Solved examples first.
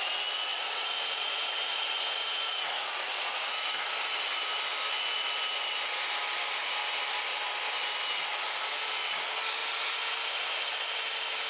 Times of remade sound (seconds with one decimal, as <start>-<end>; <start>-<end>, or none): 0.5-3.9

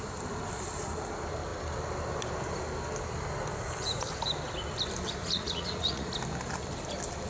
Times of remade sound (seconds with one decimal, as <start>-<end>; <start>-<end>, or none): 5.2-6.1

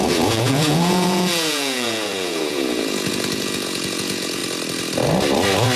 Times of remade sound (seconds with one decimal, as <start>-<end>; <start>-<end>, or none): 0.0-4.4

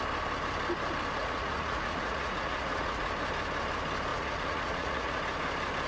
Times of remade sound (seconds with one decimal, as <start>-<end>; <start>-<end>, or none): 1.2-3.1; 4.1-5.2

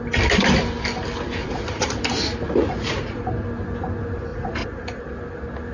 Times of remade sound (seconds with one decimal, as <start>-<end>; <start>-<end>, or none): 1.4-2.0; 2.6-3.3; 4.3-5.0

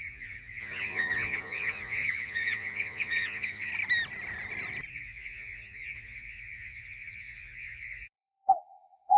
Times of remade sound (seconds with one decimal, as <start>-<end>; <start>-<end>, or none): 0.0-3.7; 4.9-9.2